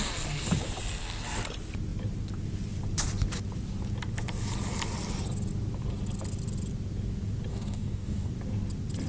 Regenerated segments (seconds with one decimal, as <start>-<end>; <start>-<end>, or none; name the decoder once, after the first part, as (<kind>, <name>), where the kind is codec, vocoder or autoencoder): 7.5-8.3 (codec, DAC)